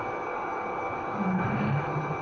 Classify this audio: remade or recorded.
recorded